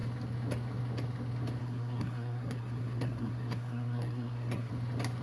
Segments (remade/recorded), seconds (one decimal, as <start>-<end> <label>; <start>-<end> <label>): 0.0-1.6 recorded; 1.6-4.7 remade; 4.7-5.2 recorded